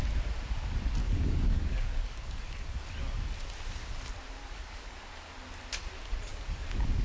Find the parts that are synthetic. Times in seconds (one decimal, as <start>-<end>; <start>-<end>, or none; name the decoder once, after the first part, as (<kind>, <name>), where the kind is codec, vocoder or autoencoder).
1.0-2.9 (codec, DAC); 4.4-5.1; 6.3-7.0